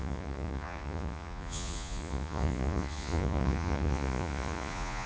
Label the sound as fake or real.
fake